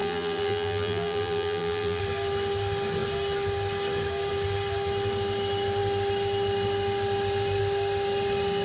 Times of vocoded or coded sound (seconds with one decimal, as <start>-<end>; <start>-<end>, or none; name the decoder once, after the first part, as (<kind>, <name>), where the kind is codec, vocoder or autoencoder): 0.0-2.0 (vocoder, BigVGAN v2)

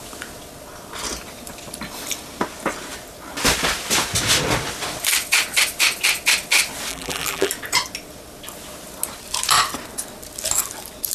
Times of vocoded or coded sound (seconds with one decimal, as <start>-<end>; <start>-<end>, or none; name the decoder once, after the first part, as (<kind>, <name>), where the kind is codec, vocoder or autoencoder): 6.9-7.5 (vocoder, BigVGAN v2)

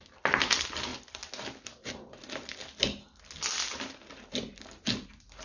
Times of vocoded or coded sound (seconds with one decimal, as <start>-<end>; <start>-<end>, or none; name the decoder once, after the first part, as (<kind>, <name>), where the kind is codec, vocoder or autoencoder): 0.0-0.9 (vocoder, BigVGAN v2); 4.1-5.4

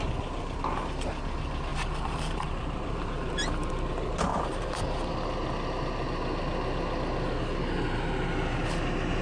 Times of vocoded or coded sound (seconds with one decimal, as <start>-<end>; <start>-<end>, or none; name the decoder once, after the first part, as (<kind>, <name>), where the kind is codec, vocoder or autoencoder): 1.7-3.7 (vocoder, BigVGAN v2); 4.3-4.8

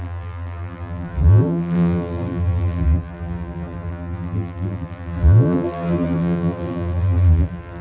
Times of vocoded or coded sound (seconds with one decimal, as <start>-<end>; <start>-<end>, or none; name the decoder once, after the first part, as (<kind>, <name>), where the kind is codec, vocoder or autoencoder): 0.0-7.8 (vocoder, BigVGAN v2)

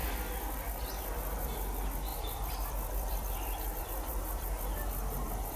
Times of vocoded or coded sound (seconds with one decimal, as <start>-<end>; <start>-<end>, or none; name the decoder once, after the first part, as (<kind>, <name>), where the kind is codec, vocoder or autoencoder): 0.5-5.6 (vocoder, BigVGAN v2)

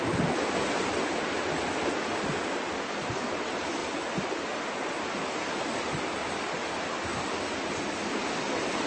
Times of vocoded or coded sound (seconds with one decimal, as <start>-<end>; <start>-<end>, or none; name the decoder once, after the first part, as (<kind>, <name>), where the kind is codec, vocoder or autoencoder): none

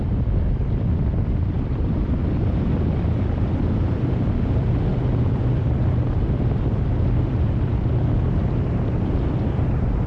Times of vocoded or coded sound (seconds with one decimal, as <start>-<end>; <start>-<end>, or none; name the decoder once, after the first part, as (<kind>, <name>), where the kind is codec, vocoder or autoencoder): 0.0-10.1 (vocoder, BigVGAN v2)